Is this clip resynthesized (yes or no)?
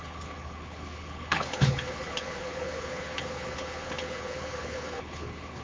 yes